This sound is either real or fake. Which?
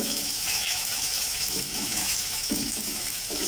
fake